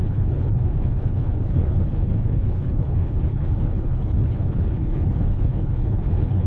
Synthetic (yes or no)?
yes